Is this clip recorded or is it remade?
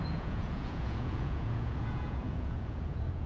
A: remade